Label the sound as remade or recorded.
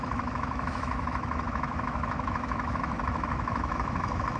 remade